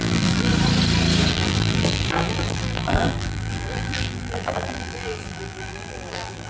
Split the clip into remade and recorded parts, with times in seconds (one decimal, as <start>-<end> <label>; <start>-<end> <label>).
0.0-0.5 remade; 0.5-1.3 recorded; 1.3-6.5 remade